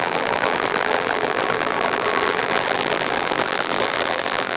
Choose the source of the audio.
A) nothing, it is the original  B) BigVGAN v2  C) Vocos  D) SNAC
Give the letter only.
B